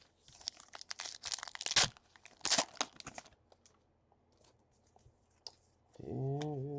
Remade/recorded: recorded